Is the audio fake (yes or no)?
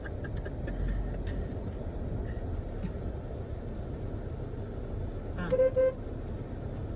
no